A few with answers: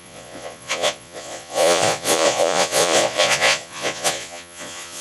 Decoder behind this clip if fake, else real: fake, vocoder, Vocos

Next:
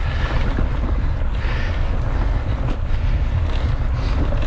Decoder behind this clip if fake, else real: real